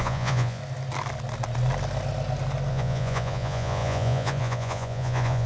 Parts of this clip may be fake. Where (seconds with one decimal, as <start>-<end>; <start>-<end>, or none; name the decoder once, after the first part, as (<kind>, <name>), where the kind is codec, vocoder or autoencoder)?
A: 0.0-0.6 (vocoder, Vocos); 2.7-5.5